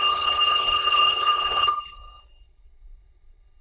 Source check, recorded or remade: remade